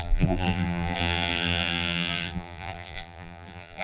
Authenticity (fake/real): fake